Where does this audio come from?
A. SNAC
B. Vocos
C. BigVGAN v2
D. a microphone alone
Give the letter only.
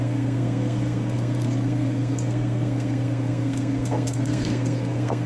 A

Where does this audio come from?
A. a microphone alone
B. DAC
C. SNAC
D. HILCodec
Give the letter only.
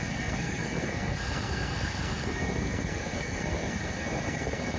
C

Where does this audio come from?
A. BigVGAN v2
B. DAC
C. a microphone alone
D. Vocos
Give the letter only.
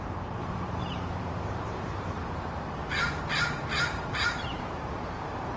A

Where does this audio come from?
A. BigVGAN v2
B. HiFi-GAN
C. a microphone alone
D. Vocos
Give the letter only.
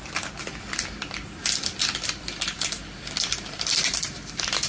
C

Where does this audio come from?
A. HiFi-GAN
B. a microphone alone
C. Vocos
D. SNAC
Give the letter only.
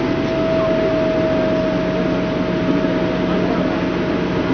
B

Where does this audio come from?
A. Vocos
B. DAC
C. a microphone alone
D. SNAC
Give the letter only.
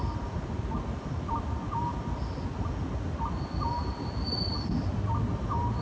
C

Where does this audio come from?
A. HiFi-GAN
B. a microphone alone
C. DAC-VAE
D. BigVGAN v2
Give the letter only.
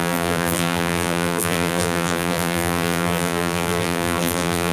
D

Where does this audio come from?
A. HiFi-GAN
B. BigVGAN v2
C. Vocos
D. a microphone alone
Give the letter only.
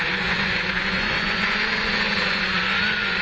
C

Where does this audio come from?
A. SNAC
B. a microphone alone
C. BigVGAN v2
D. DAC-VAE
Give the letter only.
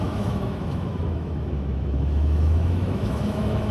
D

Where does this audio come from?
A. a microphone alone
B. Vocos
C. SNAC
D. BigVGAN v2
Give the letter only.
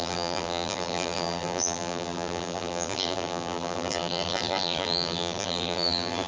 D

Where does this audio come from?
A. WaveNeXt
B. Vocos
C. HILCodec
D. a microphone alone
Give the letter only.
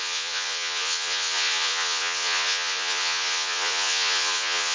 B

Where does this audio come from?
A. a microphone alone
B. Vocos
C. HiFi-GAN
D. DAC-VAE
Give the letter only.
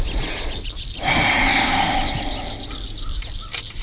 A